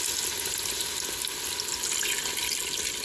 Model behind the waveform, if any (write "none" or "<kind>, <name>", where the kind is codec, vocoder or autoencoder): none